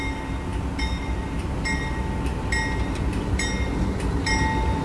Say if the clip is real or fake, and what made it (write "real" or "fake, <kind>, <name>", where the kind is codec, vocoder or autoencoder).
real